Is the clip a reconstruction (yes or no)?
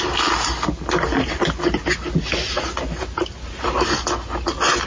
no